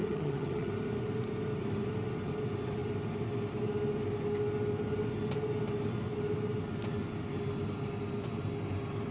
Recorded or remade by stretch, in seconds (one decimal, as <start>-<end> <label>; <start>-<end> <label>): 0.0-0.7 remade; 0.7-9.1 recorded